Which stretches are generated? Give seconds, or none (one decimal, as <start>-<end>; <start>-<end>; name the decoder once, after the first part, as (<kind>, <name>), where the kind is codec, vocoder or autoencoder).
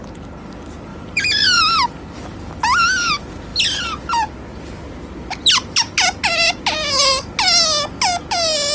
0.9-1.6 (vocoder, BigVGAN v2)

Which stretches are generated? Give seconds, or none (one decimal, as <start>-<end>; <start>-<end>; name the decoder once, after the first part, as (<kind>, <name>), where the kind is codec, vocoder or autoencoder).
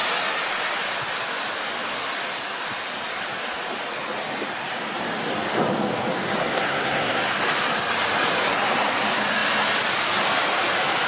6.4-7.2 (codec, SNAC)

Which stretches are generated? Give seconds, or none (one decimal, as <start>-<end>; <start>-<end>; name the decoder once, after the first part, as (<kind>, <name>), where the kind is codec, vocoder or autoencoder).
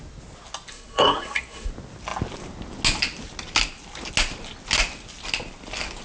0.7-1.7 (codec, SNAC)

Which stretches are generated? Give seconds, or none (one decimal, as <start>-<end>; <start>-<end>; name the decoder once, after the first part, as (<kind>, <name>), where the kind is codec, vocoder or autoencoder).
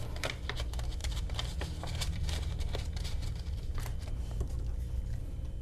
1.0-4.4 (vocoder, BigVGAN v2)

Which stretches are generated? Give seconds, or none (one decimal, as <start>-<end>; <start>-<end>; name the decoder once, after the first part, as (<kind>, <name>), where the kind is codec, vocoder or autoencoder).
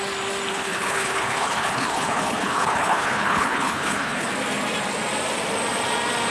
0.5-4.3 (codec, HILCodec)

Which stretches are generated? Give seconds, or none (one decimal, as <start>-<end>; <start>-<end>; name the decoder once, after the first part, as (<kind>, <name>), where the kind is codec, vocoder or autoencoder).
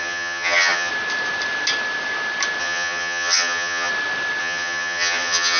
0.0-0.9 (vocoder, HiFi-GAN); 2.6-3.9; 4.4-5.6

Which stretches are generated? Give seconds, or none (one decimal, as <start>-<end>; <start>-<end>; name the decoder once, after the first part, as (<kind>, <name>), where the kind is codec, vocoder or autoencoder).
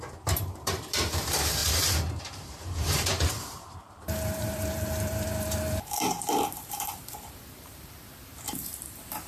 0.0-9.3 (vocoder, BigVGAN v2)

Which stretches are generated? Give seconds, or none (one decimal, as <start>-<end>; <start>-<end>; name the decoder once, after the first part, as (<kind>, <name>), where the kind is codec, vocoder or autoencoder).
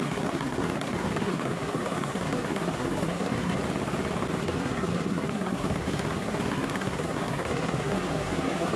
0.0-3.6 (codec, SNAC); 4.4-8.8